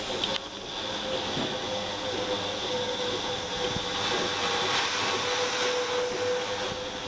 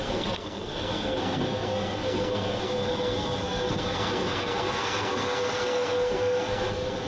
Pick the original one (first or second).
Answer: first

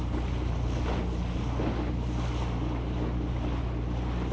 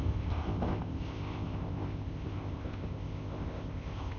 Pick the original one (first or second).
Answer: first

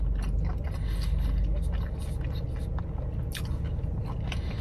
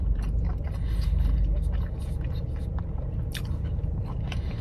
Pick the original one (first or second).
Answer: first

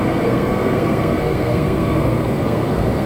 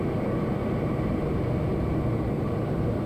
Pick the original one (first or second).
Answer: second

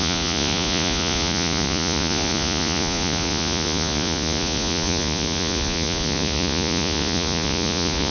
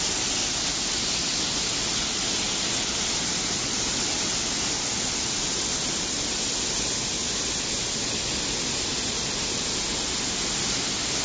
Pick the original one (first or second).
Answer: second